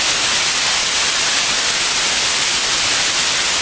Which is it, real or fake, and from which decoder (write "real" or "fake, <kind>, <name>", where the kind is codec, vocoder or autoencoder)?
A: real